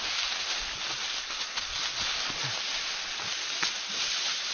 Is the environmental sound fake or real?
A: real